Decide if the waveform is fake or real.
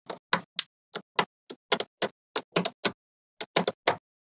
real